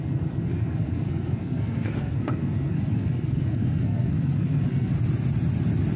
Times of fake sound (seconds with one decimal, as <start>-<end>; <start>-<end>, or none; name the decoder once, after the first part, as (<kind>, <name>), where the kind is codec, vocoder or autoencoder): 0.0-4.9 (codec, SNAC)